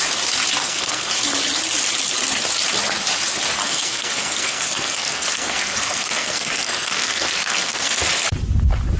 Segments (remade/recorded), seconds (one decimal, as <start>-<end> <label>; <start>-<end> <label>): 0.0-0.6 recorded; 0.6-1.1 remade; 1.1-3.6 recorded; 3.6-8.0 remade; 8.0-9.0 recorded